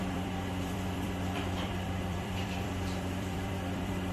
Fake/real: fake